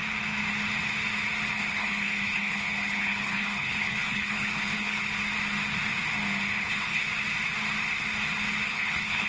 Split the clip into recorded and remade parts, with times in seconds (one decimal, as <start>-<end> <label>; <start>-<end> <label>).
0.0-1.6 recorded; 1.6-5.0 remade; 5.0-6.5 recorded; 6.5-7.0 remade; 7.0-8.7 recorded; 8.7-9.3 remade